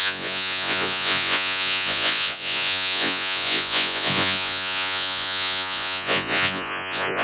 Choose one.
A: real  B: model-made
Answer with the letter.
B